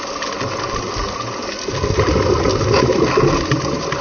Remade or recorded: recorded